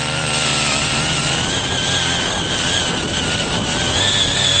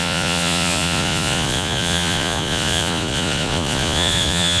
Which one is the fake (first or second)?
second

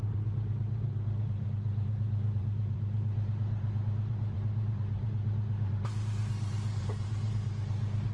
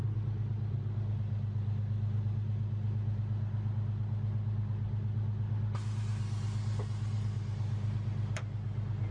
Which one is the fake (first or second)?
first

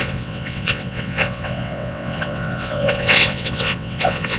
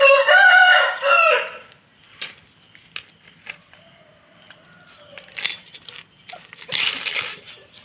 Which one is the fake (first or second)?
first